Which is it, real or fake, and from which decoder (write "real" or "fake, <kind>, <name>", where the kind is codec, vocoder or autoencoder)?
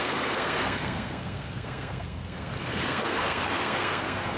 fake, codec, SNAC